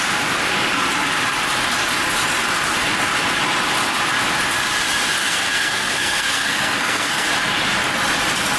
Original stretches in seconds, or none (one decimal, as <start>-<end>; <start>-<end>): 0.0-5.2; 7.3-8.6